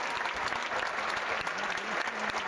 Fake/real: real